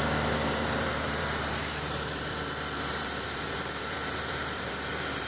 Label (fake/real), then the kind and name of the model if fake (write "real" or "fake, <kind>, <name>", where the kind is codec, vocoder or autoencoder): fake, vocoder, BigVGAN v2